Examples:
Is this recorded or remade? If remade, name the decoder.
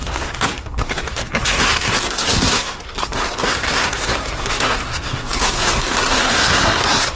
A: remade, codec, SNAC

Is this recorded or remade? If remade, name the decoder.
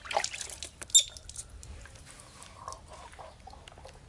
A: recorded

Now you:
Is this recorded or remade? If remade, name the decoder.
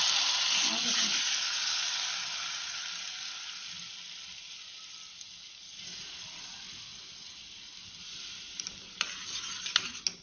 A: recorded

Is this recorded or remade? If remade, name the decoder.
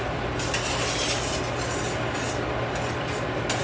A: recorded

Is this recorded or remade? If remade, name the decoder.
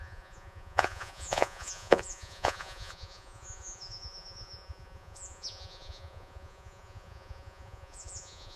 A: remade, vocoder, Vocos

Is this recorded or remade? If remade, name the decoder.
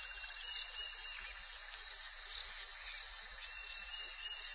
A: recorded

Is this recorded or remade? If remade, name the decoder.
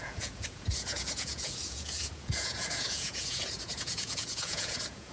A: remade, vocoder, Vocos